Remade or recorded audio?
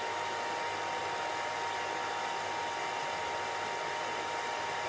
recorded